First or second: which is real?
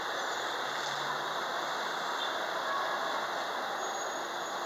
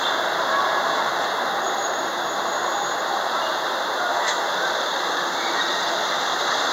first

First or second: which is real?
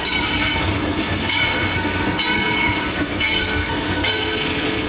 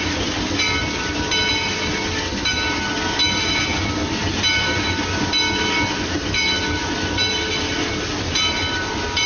second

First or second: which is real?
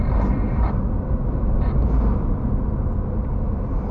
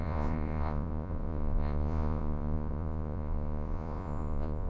first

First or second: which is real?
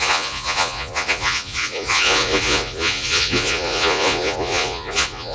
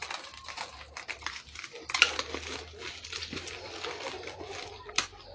second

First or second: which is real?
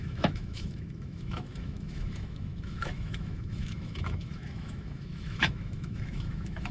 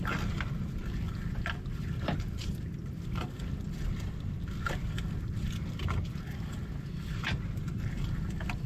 second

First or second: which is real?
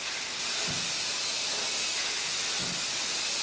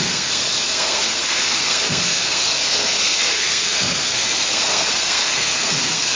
first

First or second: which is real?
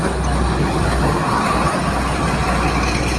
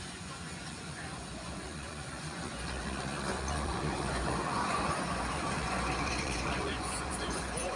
first